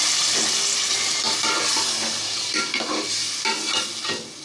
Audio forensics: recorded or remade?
recorded